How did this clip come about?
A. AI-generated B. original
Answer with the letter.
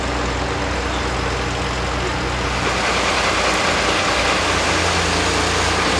B